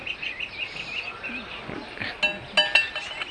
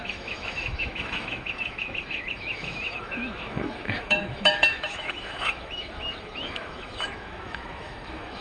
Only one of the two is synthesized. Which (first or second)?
second